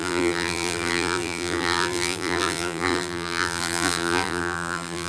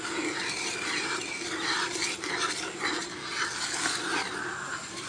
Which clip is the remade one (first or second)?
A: first